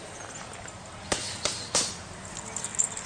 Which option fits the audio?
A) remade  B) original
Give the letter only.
B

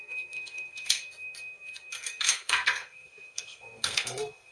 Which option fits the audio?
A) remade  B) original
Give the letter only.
A